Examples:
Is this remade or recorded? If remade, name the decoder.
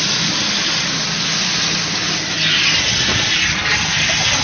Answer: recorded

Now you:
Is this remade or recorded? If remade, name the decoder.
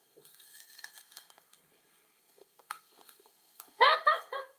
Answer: remade, codec, SNAC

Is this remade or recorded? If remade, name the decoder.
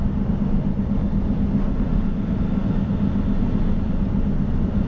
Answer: recorded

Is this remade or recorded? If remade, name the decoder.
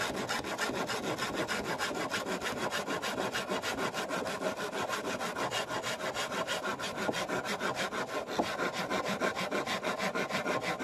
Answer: recorded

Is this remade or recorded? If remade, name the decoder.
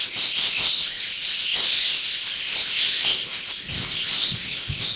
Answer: remade, codec, ZipCodec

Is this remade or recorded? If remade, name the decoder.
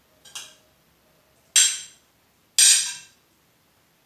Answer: recorded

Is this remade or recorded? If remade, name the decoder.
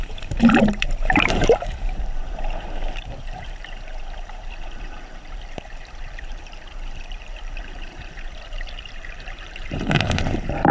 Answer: remade, vocoder, BigVGAN v2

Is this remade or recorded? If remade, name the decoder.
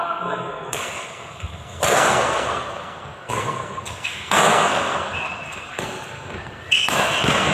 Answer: remade, codec, SNAC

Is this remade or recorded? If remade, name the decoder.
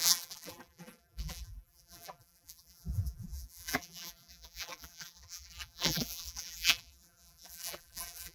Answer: remade, vocoder, BigVGAN v2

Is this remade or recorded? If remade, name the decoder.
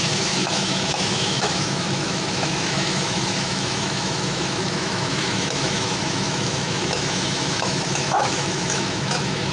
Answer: remade, autoencoder, DAC-VAE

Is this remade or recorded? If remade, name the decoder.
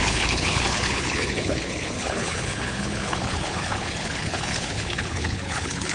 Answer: remade, codec, HILCodec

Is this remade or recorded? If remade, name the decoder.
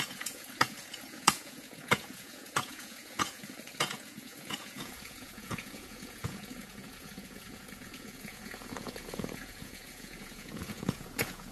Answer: remade, vocoder, Vocos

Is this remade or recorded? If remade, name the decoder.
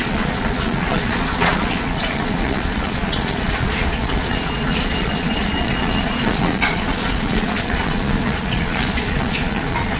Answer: remade, vocoder, Vocos